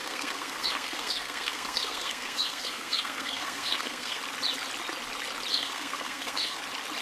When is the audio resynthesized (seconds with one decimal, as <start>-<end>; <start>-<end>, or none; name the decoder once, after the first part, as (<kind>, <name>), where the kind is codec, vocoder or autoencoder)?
0.0-4.2 (codec, SNAC); 5.5-6.6